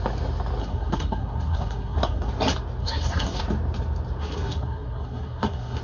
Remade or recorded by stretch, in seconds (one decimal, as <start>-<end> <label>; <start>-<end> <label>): 0.0-0.6 recorded; 0.6-2.3 remade; 2.3-2.8 recorded; 2.8-3.4 remade; 3.4-4.2 recorded; 4.2-5.8 remade